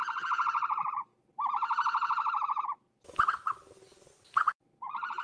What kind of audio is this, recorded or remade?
recorded